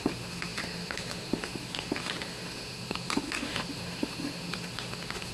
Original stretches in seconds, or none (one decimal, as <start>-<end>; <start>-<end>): none